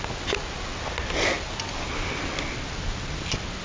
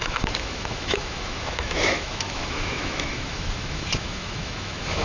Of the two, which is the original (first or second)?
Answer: first